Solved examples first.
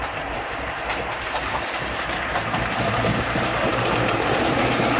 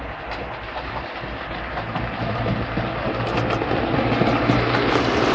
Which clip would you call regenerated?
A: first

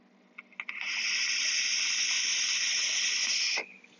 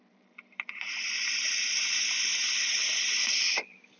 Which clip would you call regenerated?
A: second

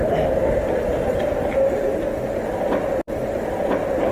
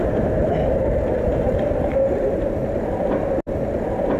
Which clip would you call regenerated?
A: second